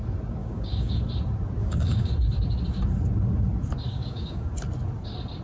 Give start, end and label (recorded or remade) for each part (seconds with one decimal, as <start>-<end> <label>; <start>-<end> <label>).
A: 0.0-0.4 recorded; 0.4-1.0 remade; 1.0-1.6 recorded; 1.6-2.1 remade; 2.1-3.9 recorded; 3.9-4.5 remade; 4.5-5.4 recorded